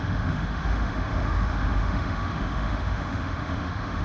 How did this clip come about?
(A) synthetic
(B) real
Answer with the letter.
A